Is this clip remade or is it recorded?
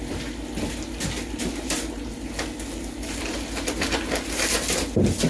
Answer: recorded